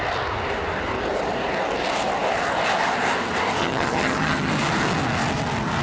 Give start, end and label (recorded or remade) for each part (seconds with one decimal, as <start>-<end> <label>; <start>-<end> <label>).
0.0-3.6 recorded; 3.6-4.5 remade; 4.5-5.8 recorded